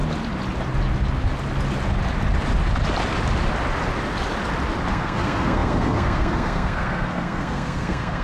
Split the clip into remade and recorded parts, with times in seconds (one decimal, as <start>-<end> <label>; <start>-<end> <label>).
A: 0.0-4.9 recorded; 4.9-8.2 remade